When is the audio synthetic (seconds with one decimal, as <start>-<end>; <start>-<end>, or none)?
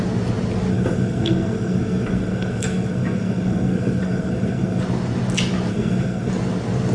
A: 0.7-4.8; 5.7-6.3